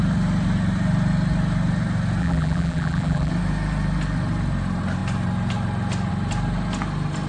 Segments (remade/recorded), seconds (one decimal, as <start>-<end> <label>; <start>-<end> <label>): 0.0-2.2 recorded; 2.2-3.3 remade; 3.3-7.3 recorded